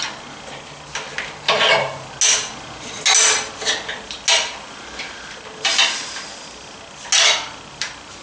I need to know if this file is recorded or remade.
recorded